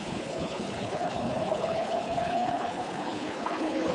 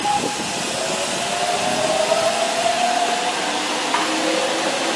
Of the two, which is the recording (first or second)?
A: second